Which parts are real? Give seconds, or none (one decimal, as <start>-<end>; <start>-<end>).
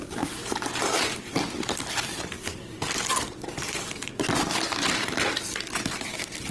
none